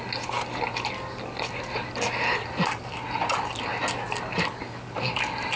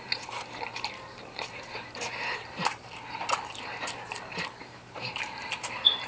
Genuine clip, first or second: first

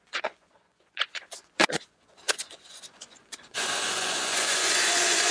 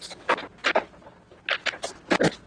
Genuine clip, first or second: second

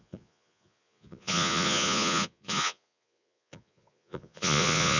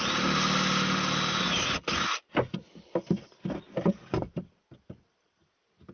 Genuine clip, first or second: second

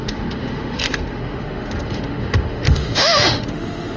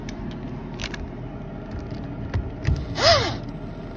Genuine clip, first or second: second